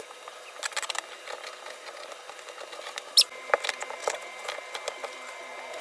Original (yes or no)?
yes